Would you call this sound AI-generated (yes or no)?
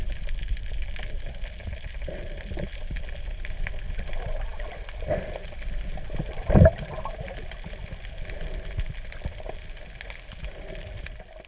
no